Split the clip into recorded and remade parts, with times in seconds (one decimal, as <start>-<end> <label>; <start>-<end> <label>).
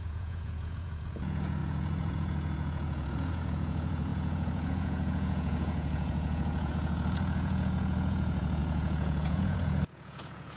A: 0.0-10.6 remade